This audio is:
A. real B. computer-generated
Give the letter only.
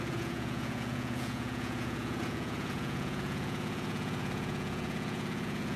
B